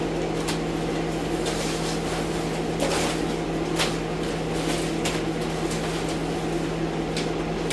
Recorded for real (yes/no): yes